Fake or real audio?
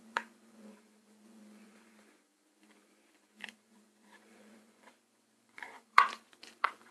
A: fake